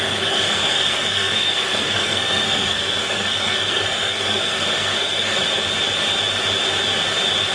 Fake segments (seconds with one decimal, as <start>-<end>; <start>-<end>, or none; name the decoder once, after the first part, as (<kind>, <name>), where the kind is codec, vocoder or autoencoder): 0.0-5.4 (codec, SNAC)